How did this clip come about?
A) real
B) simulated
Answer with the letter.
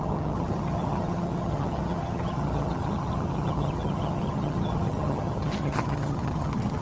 B